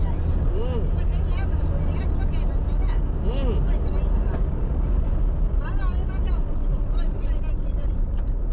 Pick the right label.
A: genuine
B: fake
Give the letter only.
A